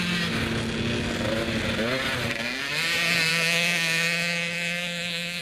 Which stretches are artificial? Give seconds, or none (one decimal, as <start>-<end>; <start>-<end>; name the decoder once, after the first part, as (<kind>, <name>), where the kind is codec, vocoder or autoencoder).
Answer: 3.3-5.4 (autoencoder, DAC-VAE)